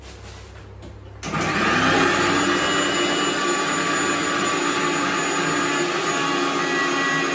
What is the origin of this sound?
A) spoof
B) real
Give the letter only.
B